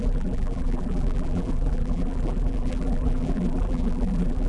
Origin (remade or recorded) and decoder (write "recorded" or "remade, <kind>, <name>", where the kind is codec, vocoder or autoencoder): remade, vocoder, BigVGAN v2